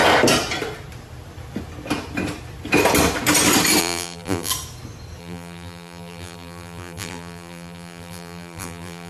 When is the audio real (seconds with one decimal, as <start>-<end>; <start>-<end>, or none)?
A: 0.0-3.8; 4.5-5.2